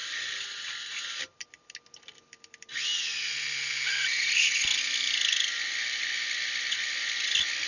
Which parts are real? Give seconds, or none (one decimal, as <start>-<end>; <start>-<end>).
1.2-7.7